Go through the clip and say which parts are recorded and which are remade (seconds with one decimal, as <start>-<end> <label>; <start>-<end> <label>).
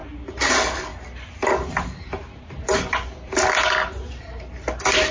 0.0-5.1 recorded